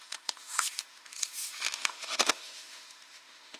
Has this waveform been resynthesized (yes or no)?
yes